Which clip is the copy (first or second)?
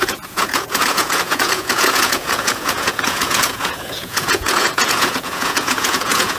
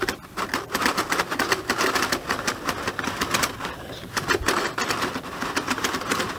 first